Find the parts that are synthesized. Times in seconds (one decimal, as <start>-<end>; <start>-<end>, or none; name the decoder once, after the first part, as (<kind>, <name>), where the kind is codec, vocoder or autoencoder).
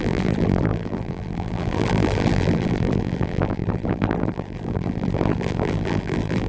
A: 0.0-6.5 (vocoder, BigVGAN v2)